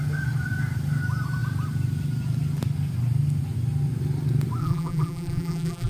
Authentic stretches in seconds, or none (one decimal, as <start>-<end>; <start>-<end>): 0.0-4.6